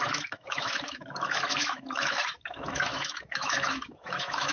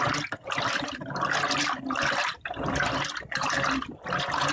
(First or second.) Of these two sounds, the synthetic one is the first